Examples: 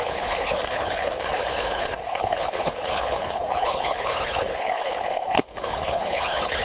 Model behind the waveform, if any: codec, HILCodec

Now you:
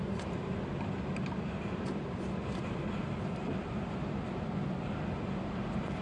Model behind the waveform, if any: none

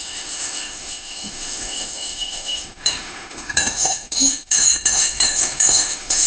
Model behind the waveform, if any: autoencoder, DAC-VAE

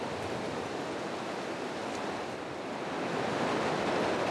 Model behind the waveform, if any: none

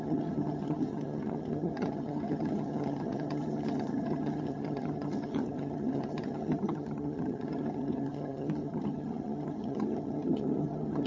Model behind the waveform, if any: vocoder, HiFi-GAN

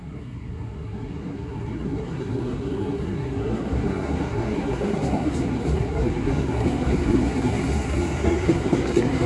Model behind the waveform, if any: codec, SNAC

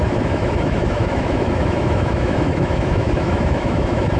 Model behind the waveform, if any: autoencoder, DAC-VAE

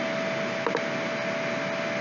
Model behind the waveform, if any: none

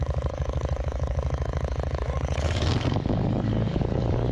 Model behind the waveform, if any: codec, DAC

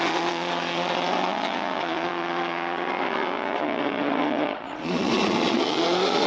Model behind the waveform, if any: vocoder, Vocos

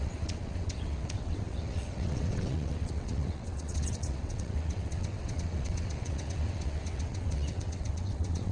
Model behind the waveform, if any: vocoder, WaveNeXt